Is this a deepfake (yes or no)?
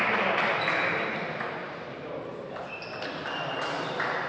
no